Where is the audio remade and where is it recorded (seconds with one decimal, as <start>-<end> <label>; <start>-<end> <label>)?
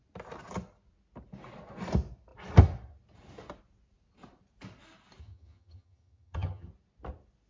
0.0-5.2 recorded; 5.2-6.7 remade; 6.7-7.5 recorded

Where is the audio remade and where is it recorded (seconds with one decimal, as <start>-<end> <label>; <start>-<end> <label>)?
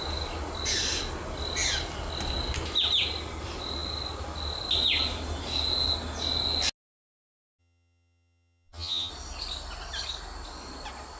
0.0-7.6 recorded; 7.6-9.1 remade; 9.1-11.2 recorded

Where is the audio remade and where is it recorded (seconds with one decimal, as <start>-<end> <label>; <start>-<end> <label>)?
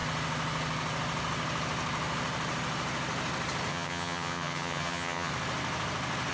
0.0-3.7 recorded; 3.7-5.3 remade; 5.3-6.3 recorded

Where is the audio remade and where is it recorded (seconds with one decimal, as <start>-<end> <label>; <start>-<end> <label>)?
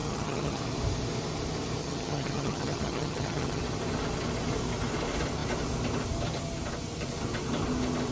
0.0-0.6 remade; 0.6-1.8 recorded; 1.8-3.6 remade; 3.6-8.1 recorded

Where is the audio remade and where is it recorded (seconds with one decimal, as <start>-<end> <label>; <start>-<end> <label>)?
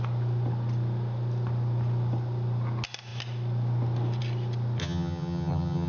0.0-4.8 recorded; 4.8-5.9 remade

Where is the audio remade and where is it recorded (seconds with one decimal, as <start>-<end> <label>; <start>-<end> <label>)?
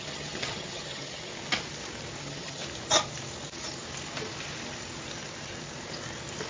0.0-1.3 remade; 1.3-2.2 recorded; 2.2-2.6 remade; 2.6-6.5 recorded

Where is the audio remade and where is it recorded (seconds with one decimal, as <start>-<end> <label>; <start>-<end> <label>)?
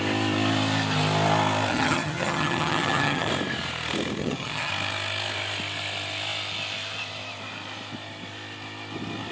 0.0-1.7 recorded; 1.7-3.3 remade; 3.3-4.2 recorded; 4.2-4.7 remade; 4.7-9.3 recorded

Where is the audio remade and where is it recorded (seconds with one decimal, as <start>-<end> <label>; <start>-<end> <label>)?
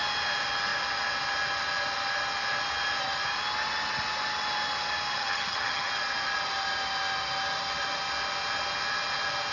0.0-5.2 recorded; 5.2-5.9 remade; 5.9-9.5 recorded